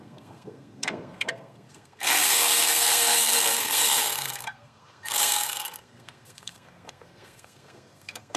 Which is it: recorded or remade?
remade